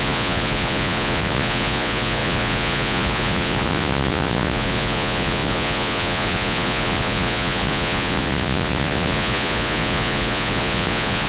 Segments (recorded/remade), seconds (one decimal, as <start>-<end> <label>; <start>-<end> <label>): 0.0-11.3 remade